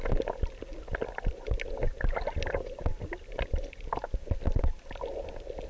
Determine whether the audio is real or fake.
real